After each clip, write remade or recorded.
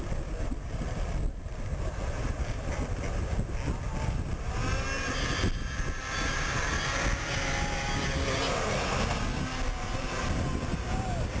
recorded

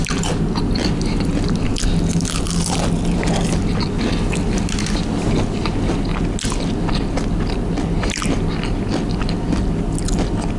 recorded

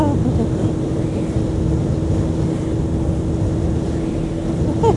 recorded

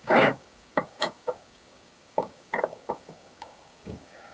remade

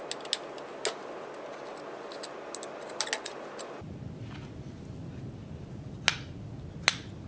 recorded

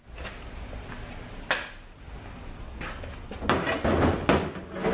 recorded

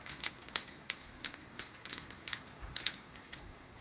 remade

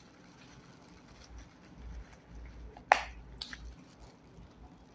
recorded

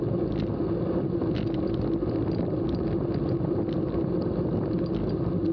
recorded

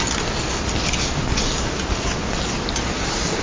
recorded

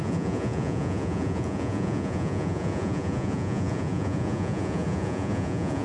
remade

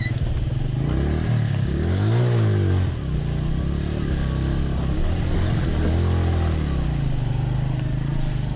recorded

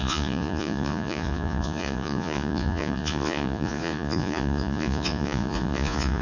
remade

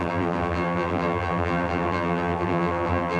remade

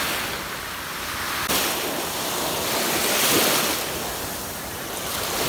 recorded